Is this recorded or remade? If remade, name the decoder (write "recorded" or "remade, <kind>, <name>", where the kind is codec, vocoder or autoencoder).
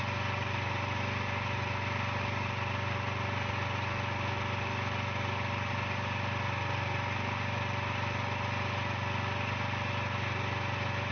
recorded